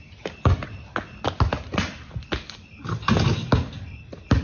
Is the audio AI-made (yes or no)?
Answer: no